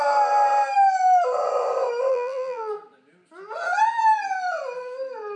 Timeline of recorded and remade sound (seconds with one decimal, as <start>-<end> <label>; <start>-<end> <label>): 0.0-2.1 recorded; 2.1-2.7 remade; 2.7-5.4 recorded